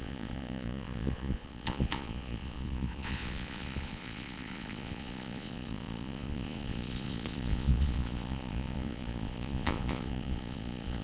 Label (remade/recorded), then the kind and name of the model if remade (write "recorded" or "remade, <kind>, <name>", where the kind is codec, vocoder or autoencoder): remade, vocoder, Vocos